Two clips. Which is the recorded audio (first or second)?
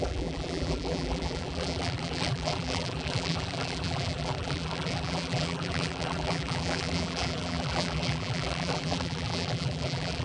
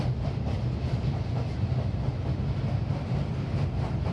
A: second